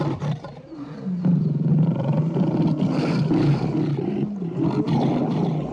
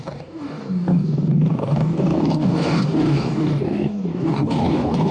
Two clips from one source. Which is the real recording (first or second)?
first